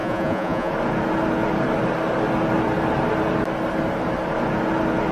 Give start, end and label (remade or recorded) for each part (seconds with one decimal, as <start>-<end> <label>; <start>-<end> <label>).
0.0-0.7 remade; 0.7-5.1 recorded